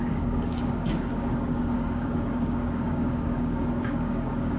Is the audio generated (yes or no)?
yes